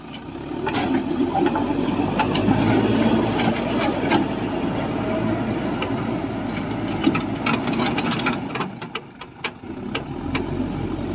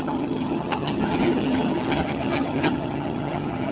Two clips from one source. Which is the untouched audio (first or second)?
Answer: first